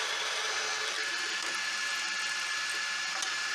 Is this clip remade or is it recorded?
recorded